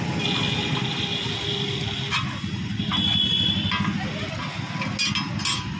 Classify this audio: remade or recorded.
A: recorded